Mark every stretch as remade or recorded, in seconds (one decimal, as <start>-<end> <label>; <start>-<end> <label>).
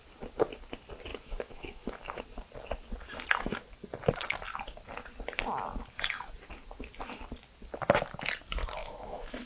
0.0-1.1 recorded; 1.1-2.2 remade; 2.2-8.8 recorded; 8.8-9.5 remade